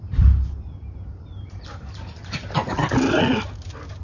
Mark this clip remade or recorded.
recorded